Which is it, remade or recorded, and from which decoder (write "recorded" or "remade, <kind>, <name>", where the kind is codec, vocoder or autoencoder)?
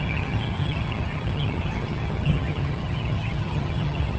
remade, vocoder, HiFi-GAN